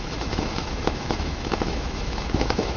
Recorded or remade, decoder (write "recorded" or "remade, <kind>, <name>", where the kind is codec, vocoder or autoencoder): remade, autoencoder, DAC-VAE